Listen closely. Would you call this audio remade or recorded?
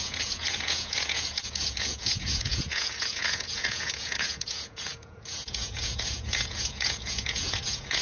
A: remade